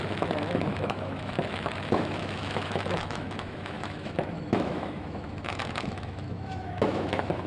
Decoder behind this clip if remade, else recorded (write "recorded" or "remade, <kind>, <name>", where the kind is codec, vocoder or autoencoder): remade, autoencoder, DAC-VAE